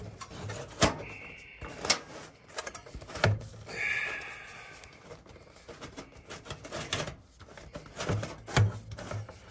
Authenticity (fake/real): real